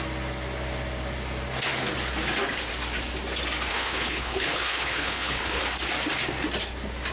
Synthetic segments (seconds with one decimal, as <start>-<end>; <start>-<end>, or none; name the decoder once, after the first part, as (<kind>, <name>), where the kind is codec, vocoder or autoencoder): 3.7-5.6 (codec, HILCodec)